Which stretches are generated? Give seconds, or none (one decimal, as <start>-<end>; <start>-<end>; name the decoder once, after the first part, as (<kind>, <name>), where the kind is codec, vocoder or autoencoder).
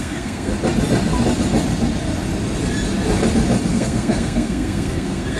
0.0-0.5 (codec, SNAC); 3.7-5.4